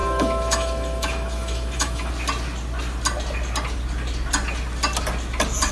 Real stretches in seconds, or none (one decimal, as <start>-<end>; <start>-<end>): 2.1-5.7